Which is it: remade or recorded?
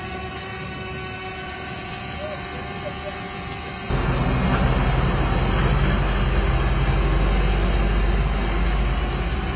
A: recorded